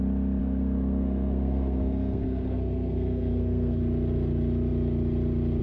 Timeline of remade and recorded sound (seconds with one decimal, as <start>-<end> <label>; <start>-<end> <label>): 0.0-0.4 recorded; 0.4-3.8 remade; 3.8-5.6 recorded